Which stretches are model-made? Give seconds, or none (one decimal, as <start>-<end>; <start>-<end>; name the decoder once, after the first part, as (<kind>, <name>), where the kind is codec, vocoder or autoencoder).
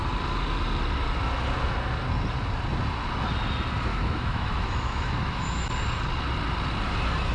3.9-5.7 (autoencoder, DAC-VAE)